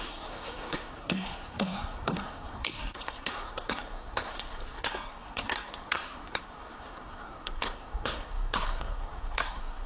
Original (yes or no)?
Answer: no